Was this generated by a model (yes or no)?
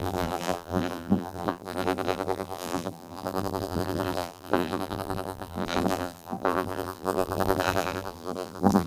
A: yes